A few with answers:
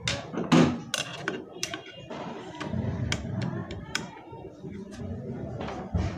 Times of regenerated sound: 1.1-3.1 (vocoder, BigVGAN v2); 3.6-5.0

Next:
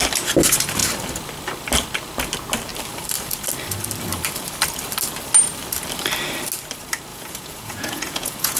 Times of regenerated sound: 7.1-8.6 (vocoder, Vocos)

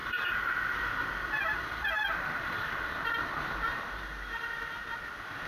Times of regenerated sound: 0.0-2.8 (vocoder, BigVGAN v2)

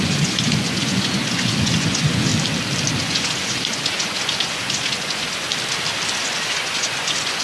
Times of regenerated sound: 0.0-2.3 (vocoder, Vocos); 3.0-5.5; 6.1-7.4

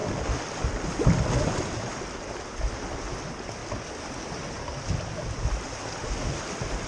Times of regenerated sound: none